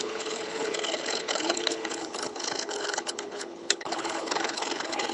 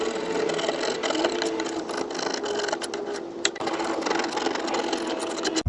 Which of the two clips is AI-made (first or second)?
first